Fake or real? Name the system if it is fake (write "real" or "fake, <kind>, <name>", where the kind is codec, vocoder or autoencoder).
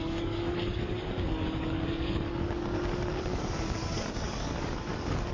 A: fake, codec, DAC